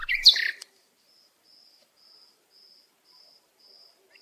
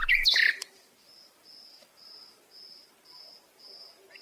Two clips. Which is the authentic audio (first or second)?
second